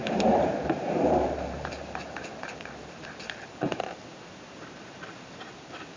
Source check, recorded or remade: remade